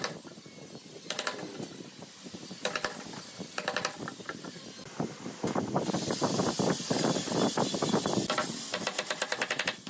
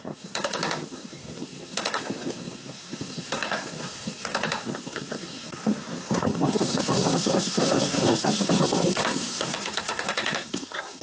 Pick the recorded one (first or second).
first